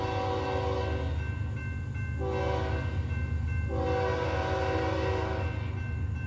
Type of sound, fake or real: real